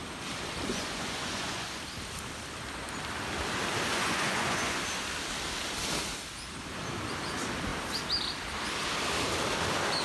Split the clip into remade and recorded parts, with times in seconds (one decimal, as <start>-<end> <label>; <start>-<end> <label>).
0.0-0.7 recorded; 0.7-1.8 remade; 1.8-3.9 recorded; 3.9-4.8 remade; 4.8-10.0 recorded